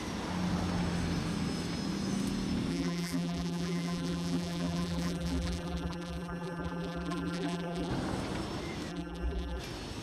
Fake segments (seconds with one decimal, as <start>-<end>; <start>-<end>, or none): 2.7-7.9; 8.9-9.6